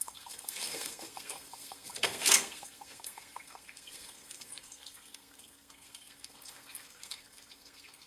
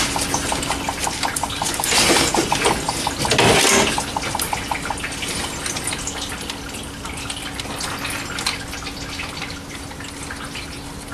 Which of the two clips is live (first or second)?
second